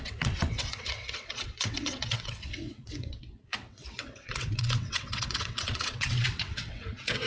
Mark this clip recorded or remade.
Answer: remade